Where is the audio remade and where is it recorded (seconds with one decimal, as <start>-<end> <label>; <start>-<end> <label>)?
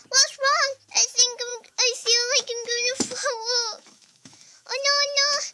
0.0-1.5 recorded; 1.5-4.8 remade; 4.8-5.5 recorded